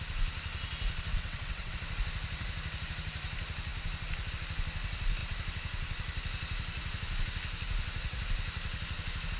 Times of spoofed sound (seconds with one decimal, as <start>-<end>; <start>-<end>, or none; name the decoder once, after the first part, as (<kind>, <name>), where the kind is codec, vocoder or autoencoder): 1.1-1.7 (vocoder, WaveNeXt)